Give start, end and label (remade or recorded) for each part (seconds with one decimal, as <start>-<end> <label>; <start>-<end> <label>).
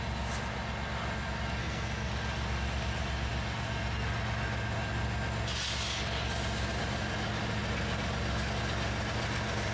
0.0-1.6 recorded; 1.6-2.1 remade; 2.1-9.7 recorded